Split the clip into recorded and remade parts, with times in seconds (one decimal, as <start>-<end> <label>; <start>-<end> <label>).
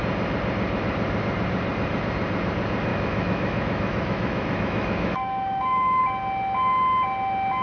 0.0-2.9 recorded; 2.9-6.0 remade; 6.0-7.6 recorded